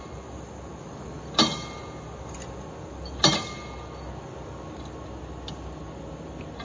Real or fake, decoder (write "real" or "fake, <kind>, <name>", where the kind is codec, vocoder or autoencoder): fake, vocoder, BigVGAN v2